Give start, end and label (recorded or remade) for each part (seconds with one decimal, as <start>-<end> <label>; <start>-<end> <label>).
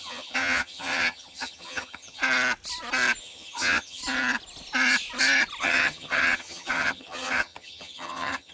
0.0-2.2 remade; 2.2-3.2 recorded; 3.2-4.0 remade; 4.0-5.6 recorded; 5.6-8.5 remade